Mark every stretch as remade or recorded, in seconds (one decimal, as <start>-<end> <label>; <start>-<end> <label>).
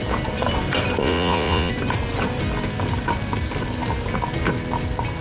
0.0-1.0 recorded; 1.0-1.7 remade; 1.7-5.2 recorded